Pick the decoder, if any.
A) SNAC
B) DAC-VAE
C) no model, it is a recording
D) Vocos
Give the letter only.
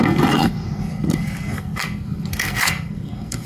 A